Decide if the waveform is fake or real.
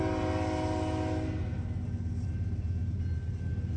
real